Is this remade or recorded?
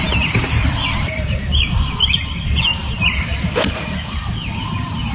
remade